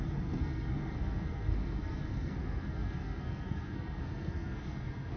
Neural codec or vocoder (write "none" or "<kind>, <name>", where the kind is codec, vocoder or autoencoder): codec, SNAC